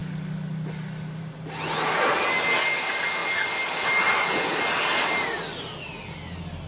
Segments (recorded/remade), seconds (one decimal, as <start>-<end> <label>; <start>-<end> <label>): 0.0-6.7 recorded